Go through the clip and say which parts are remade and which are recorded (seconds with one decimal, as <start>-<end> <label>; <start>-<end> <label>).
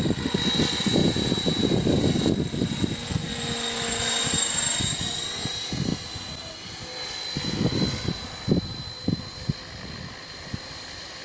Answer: 0.0-11.2 recorded